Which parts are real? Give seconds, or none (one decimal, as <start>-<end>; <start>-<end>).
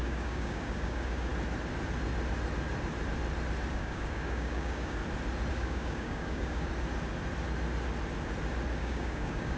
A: 1.3-3.7; 5.0-5.5; 6.7-8.8